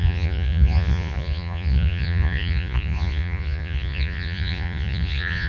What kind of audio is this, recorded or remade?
remade